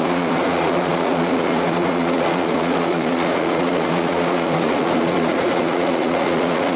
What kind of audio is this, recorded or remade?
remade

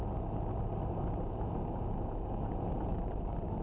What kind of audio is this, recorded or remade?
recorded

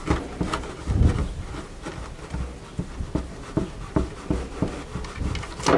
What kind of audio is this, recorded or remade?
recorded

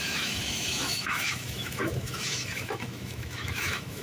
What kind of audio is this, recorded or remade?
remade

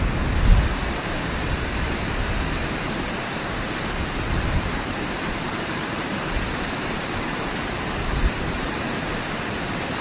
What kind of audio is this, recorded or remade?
remade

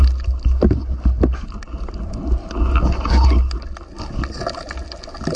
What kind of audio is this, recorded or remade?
recorded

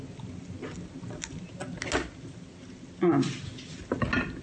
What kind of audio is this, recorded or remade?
recorded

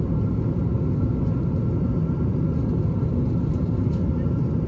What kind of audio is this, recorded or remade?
recorded